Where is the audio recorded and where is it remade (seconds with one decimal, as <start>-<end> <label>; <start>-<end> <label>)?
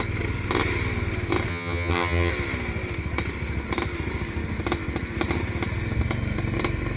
0.0-1.5 recorded; 1.5-2.3 remade; 2.3-7.0 recorded